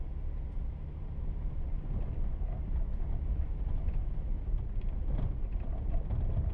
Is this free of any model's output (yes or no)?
yes